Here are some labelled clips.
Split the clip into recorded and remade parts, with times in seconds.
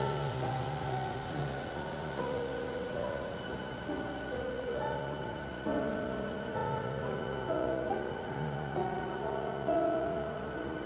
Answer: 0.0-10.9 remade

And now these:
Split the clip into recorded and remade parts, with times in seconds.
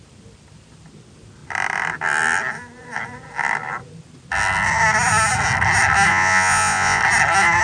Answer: 0.0-6.1 recorded; 6.1-7.0 remade; 7.0-7.6 recorded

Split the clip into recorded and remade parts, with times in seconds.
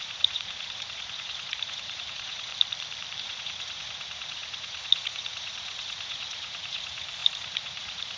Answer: 0.0-2.5 remade; 2.5-3.2 recorded; 3.2-8.2 remade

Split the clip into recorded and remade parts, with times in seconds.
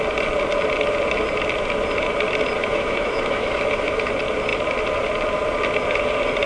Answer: 0.0-2.6 recorded; 2.6-4.1 remade; 4.1-6.5 recorded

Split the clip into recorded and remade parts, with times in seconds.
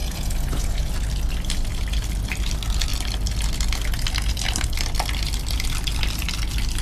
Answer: 0.0-0.9 remade; 0.9-6.8 recorded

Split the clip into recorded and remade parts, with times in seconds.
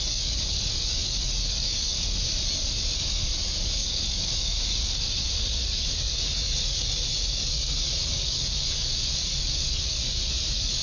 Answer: 0.0-10.8 remade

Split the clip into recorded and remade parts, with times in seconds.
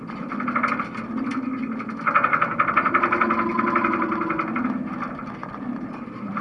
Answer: 0.0-5.2 recorded; 5.2-6.4 remade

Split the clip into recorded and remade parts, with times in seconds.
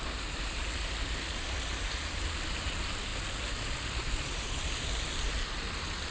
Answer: 0.0-6.1 recorded